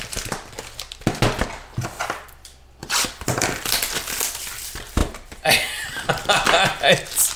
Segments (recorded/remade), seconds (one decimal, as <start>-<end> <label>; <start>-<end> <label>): 0.0-2.8 recorded; 2.8-3.6 remade; 3.6-5.0 recorded; 5.0-6.1 remade; 6.1-7.4 recorded